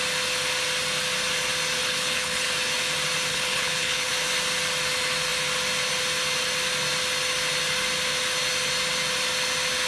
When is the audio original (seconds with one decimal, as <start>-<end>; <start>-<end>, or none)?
0.0-1.8; 2.5-3.3; 4.1-9.9